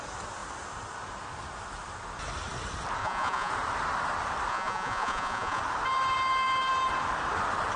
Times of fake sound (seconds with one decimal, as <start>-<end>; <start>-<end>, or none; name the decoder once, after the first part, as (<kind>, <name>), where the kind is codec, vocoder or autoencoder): 3.0-3.5 (vocoder, Vocos); 4.5-5.6